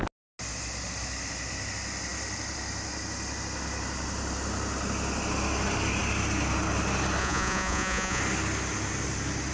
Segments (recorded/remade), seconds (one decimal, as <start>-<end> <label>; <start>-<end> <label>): 0.0-7.2 recorded; 7.2-8.2 remade; 8.2-9.5 recorded